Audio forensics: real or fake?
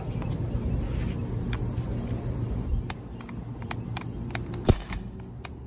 real